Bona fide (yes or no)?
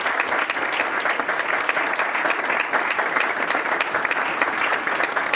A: yes